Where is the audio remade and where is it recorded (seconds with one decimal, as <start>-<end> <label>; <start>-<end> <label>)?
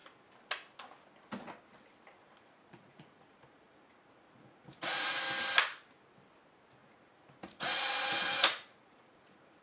0.0-2.2 recorded; 2.2-5.2 remade; 5.2-6.8 recorded; 6.8-9.6 remade